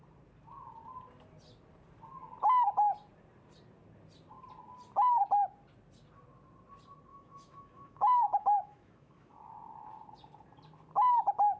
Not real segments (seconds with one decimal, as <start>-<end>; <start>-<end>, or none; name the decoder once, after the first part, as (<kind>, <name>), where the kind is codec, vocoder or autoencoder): 7.1-9.4 (autoencoder, DAC-VAE)